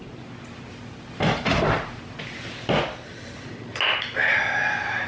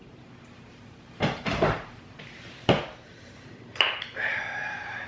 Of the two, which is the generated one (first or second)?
second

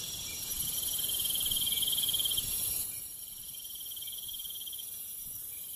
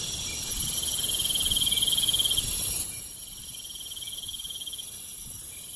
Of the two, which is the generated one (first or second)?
first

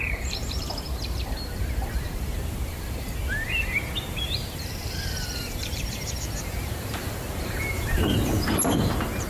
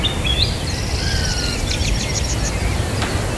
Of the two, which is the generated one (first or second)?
first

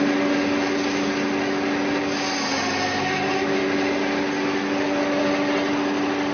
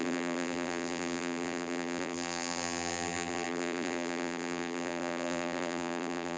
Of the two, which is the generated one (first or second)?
second